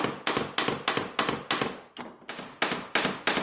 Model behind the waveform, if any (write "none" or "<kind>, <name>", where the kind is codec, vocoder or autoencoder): none